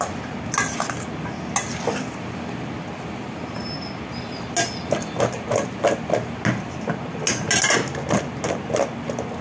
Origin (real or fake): real